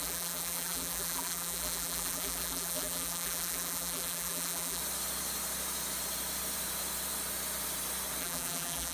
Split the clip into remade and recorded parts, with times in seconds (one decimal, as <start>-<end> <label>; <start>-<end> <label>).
0.0-4.8 remade; 4.8-8.2 recorded; 8.2-8.9 remade